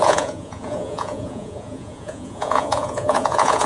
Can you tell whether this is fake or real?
fake